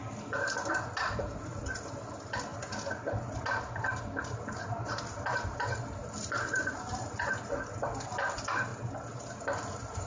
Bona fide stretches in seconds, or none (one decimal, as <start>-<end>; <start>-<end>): 0.0-10.1